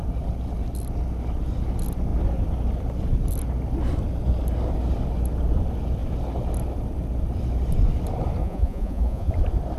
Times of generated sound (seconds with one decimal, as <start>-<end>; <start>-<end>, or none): 8.4-9.3